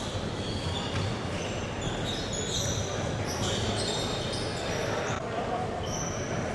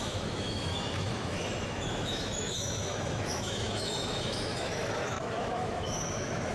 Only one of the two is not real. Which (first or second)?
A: second